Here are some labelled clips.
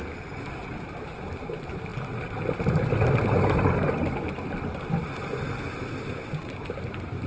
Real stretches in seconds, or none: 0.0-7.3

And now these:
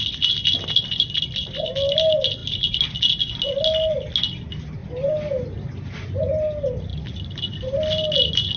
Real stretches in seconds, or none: 0.0-8.6

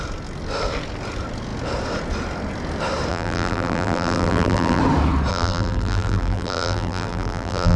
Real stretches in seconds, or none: 0.0-3.1; 4.8-5.3

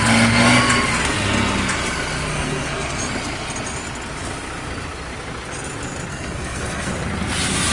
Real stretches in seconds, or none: 0.0-2.3; 3.0-6.1; 6.9-7.7

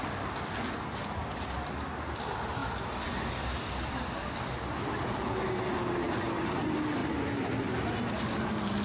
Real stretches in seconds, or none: 0.0-2.6; 5.7-7.0; 8.0-8.8

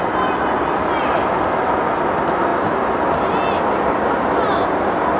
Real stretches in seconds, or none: 0.0-5.2

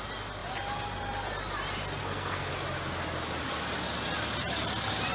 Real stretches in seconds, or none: 0.0-2.0; 2.5-5.1

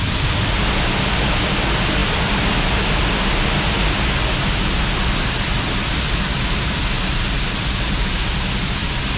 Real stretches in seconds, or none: 0.0-9.2